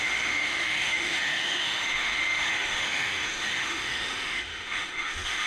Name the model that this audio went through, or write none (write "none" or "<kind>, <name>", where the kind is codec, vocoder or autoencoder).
autoencoder, DAC-VAE